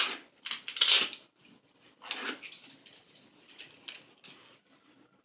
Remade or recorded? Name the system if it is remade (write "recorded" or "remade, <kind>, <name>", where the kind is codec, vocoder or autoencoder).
recorded